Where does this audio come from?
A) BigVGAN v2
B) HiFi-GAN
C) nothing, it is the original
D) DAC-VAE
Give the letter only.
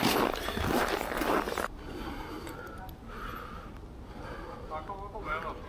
C